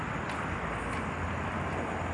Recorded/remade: recorded